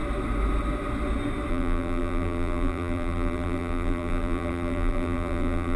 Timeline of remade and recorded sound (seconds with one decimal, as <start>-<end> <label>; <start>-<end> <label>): 0.0-1.5 recorded; 1.5-5.8 remade